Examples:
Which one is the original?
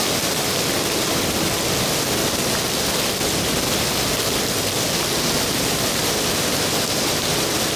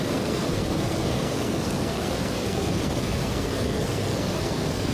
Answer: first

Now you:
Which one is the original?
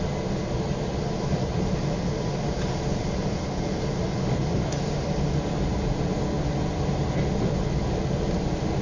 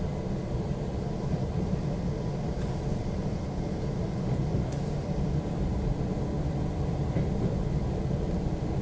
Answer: first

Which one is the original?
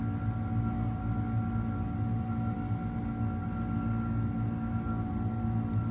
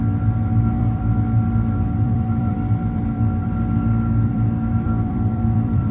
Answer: first